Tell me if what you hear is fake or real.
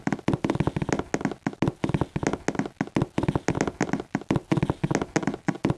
real